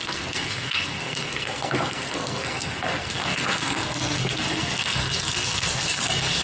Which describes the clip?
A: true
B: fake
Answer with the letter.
B